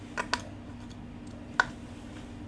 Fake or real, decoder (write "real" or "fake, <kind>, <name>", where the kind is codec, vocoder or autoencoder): real